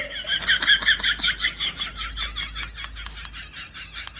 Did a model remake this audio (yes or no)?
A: no